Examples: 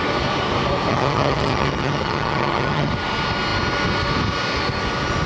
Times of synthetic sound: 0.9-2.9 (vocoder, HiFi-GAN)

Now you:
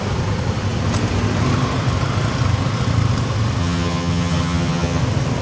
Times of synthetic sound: 3.6-5.0 (vocoder, HiFi-GAN)

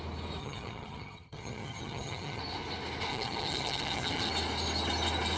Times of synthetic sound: 0.4-2.4 (vocoder, HiFi-GAN); 3.1-4.3

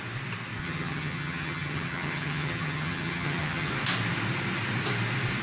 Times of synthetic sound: 0.6-3.7 (vocoder, HiFi-GAN)

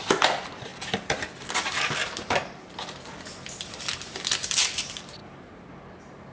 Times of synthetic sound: none

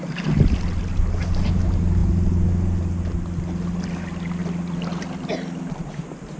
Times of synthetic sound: none

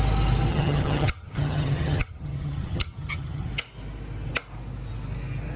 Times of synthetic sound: 0.5-3.5 (vocoder, HiFi-GAN)